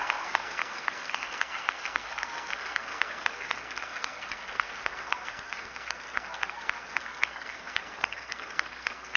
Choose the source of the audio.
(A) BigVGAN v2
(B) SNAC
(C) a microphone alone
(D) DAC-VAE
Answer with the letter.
B